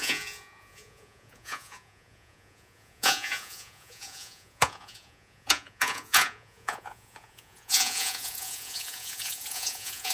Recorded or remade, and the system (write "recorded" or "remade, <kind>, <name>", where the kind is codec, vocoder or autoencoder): remade, vocoder, Vocos